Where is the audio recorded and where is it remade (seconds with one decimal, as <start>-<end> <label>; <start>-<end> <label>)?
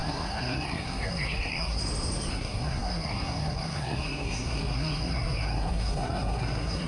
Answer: 0.0-1.8 remade; 1.8-2.3 recorded; 2.3-6.9 remade